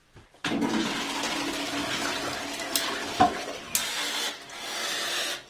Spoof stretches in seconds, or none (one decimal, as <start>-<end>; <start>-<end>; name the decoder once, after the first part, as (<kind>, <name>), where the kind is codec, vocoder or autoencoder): none